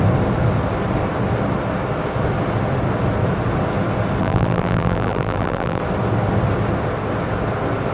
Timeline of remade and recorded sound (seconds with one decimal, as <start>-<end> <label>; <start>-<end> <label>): 0.0-4.2 recorded; 4.2-5.8 remade; 5.8-7.9 recorded